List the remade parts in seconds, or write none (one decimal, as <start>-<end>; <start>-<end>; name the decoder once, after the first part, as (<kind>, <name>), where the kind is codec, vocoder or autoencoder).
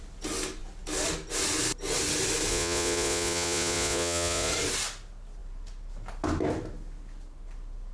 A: 2.5-4.5 (vocoder, Vocos)